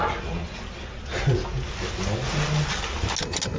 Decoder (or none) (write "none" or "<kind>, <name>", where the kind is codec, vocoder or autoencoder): none